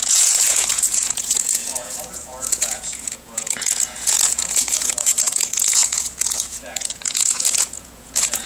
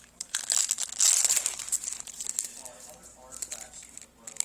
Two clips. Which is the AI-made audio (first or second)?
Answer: first